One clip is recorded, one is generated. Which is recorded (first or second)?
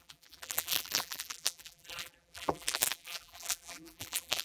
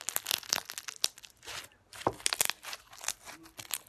second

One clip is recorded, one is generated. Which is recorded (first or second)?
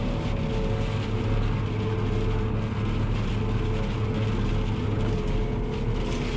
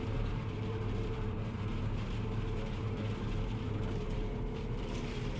first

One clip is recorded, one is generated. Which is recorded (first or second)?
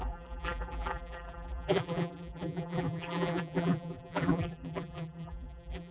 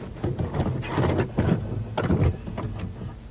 second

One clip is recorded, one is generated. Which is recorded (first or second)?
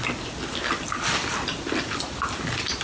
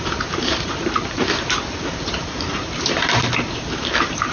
first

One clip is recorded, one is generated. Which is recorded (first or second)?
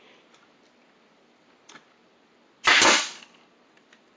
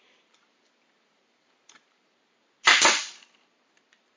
first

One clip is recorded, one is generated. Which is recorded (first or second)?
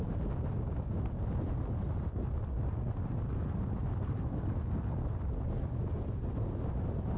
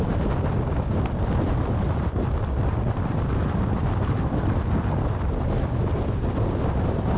first